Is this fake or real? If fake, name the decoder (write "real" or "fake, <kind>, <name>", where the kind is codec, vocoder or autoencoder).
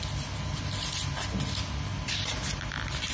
real